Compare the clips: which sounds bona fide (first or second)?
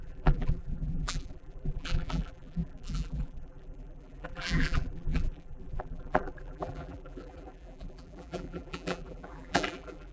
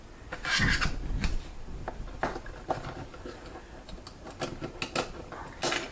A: second